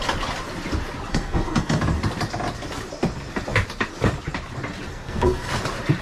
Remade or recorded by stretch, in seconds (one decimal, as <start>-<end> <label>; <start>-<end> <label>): 0.0-1.1 recorded; 1.1-1.8 remade; 1.8-4.9 recorded; 4.9-5.5 remade; 5.5-6.0 recorded